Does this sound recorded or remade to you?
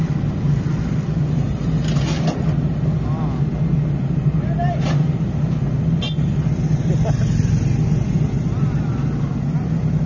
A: recorded